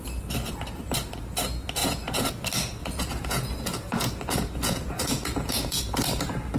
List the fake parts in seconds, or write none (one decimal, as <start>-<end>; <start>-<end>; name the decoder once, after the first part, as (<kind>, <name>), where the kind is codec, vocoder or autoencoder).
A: 1.8-2.3 (vocoder, Vocos); 2.8-5.8